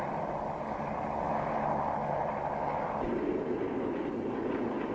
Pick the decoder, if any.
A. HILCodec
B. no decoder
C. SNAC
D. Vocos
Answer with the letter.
B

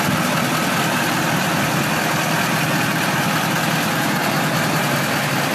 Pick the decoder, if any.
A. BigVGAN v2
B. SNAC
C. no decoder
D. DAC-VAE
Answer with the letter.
C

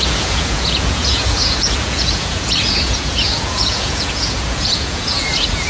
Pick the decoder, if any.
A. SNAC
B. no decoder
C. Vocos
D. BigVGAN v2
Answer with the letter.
C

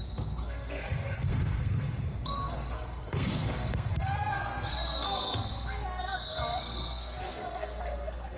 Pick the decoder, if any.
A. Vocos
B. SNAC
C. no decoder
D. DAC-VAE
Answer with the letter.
B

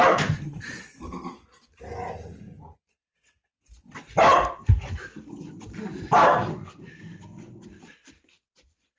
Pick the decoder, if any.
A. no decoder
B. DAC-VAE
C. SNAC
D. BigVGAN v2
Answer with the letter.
A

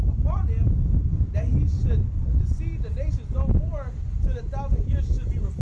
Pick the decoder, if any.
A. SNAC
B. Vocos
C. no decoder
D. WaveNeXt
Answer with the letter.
C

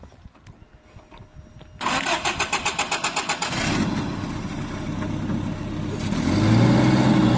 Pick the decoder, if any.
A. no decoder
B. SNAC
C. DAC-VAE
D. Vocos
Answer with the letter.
A